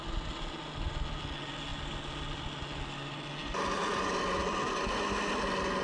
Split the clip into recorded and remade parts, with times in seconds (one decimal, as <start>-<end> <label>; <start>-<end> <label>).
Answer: 0.0-5.8 recorded